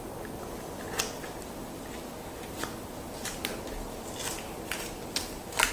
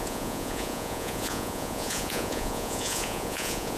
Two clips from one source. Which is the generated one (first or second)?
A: second